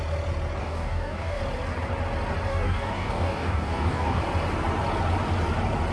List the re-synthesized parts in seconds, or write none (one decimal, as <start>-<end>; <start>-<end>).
0.6-1.4; 2.5-4.2